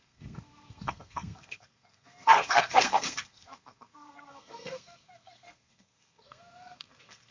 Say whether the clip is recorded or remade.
remade